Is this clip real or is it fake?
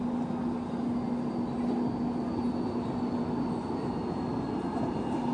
real